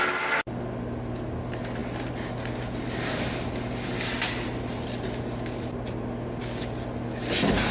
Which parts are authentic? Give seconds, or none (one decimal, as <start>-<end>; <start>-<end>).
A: 0.0-7.7